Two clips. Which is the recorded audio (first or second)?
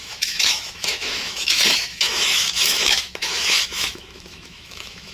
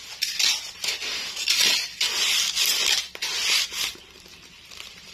second